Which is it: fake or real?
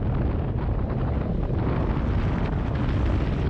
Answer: real